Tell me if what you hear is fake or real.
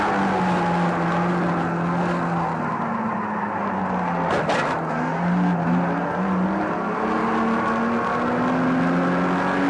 real